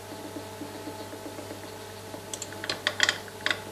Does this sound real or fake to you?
real